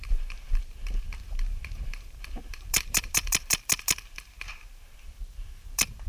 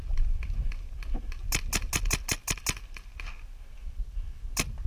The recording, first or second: second